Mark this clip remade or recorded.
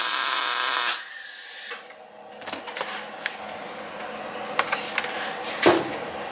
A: recorded